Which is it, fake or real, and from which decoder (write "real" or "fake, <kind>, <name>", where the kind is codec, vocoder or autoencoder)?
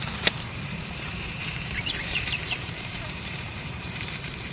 fake, vocoder, BigVGAN v2